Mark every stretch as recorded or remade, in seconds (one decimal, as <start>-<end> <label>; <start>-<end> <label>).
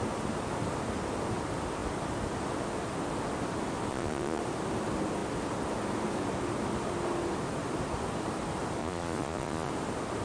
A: 0.0-3.9 recorded; 3.9-4.4 remade; 4.4-8.8 recorded; 8.8-9.7 remade; 9.7-10.2 recorded